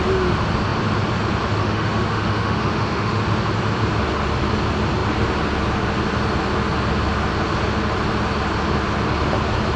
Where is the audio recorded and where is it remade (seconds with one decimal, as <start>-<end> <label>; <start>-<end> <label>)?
0.0-1.6 recorded; 1.6-3.2 remade; 3.2-9.8 recorded